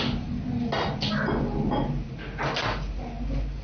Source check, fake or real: real